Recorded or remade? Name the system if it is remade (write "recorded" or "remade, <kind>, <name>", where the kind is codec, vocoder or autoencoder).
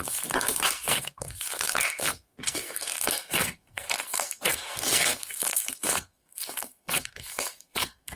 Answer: remade, codec, SNAC